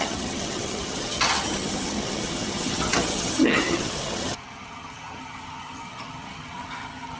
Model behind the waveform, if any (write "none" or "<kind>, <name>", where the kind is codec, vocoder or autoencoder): vocoder, HiFi-GAN